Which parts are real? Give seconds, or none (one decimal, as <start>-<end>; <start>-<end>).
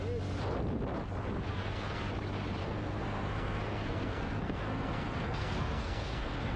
0.0-1.5; 2.1-2.6